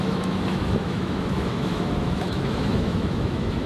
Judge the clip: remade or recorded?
remade